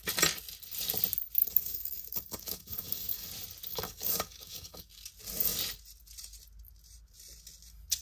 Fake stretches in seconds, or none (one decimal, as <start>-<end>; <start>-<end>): 1.4-3.3; 3.7-4.9